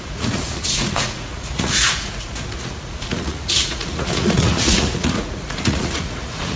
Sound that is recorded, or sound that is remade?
remade